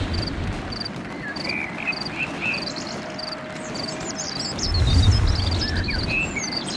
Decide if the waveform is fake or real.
fake